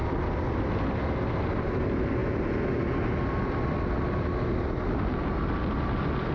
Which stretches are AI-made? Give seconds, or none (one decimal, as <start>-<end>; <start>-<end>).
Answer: none